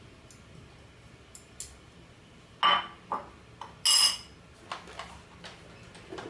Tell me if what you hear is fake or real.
real